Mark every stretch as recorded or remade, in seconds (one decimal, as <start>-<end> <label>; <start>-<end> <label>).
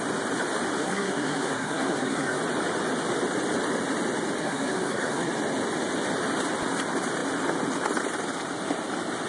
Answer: 0.0-0.8 recorded; 0.8-2.4 remade; 2.4-4.4 recorded; 4.4-5.3 remade; 5.3-9.3 recorded